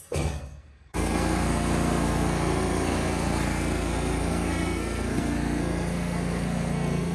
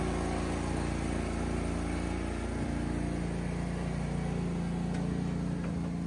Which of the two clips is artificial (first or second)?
first